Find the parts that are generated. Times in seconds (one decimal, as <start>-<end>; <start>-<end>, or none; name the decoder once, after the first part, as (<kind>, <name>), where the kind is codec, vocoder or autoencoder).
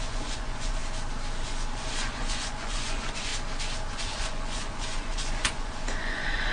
0.0-0.8 (vocoder, Vocos); 1.4-3.3; 3.9-6.5